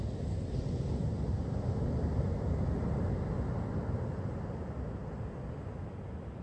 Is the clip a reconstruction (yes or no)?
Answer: no